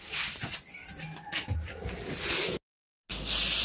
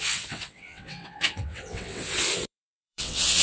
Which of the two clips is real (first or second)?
first